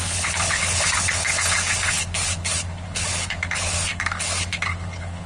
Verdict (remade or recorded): remade